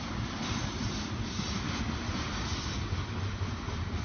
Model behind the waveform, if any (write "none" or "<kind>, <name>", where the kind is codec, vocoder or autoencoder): none